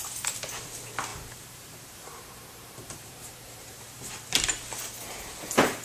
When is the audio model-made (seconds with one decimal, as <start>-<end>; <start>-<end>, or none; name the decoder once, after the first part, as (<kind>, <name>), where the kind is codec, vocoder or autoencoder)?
1.1-4.6 (vocoder, BigVGAN v2)